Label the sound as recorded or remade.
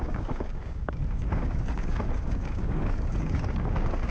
remade